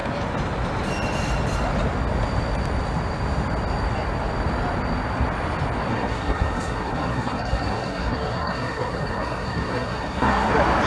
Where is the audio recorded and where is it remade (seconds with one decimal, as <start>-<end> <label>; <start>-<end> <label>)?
0.0-5.9 recorded; 5.9-10.5 remade; 10.5-10.9 recorded